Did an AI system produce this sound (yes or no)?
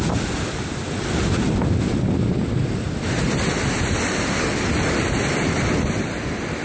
no